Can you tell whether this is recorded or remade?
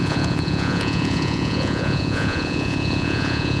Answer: remade